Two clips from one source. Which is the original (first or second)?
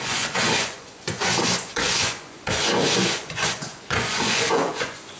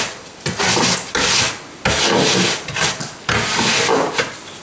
second